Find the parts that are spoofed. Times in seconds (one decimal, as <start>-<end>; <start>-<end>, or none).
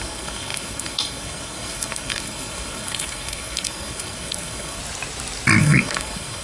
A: 0.0-4.8; 5.6-6.4